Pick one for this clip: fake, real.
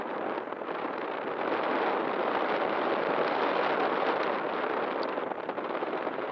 real